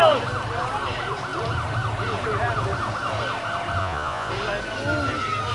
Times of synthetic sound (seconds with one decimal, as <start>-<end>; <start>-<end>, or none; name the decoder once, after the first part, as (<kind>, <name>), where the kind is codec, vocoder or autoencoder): 3.8-4.3 (vocoder, Vocos)